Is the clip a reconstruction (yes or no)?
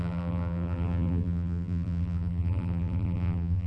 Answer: yes